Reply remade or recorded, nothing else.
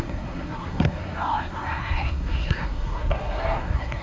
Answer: remade